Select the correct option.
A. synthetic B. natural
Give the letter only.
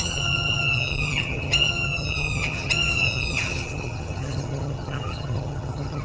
A